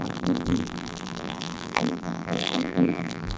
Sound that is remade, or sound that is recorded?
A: remade